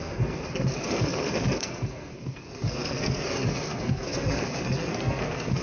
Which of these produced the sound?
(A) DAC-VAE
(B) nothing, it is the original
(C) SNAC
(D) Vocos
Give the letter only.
C